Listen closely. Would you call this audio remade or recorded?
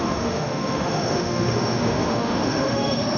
remade